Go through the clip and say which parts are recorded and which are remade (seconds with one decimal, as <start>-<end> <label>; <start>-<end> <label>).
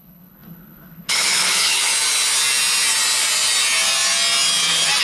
0.0-1.9 remade; 1.9-5.0 recorded